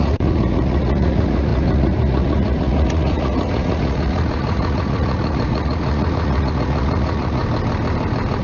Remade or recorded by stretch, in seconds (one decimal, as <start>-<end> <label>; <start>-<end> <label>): 0.0-7.4 remade; 7.4-8.4 recorded

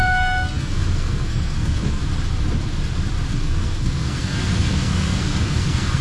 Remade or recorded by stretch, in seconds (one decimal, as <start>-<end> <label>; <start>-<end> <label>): 0.0-2.0 remade; 2.0-3.3 recorded; 3.3-6.0 remade

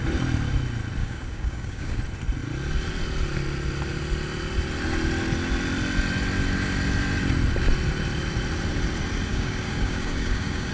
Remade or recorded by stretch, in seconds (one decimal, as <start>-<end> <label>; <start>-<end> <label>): 0.0-1.0 recorded; 1.0-2.0 remade; 2.0-9.3 recorded; 9.3-10.7 remade

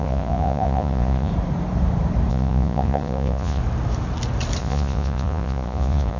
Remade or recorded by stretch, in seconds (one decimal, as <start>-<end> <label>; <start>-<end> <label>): 0.0-1.3 remade; 1.3-2.3 recorded; 2.3-3.6 remade; 3.6-4.6 recorded; 4.6-6.2 remade

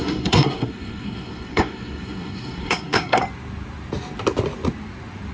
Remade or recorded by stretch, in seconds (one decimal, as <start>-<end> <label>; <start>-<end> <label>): 0.0-3.2 remade; 3.2-5.3 recorded

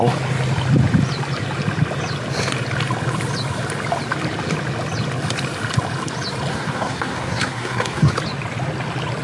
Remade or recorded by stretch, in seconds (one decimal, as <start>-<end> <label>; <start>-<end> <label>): 0.0-6.5 recorded; 6.5-8.1 remade; 8.1-9.2 recorded

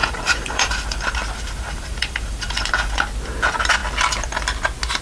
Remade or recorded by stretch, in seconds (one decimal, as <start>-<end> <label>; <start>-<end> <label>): 0.0-3.0 remade; 3.0-5.0 recorded

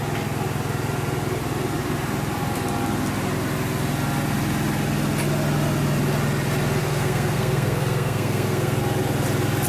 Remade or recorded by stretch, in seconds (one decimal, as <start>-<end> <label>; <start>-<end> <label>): 0.0-6.8 recorded; 6.8-8.8 remade; 8.8-9.7 recorded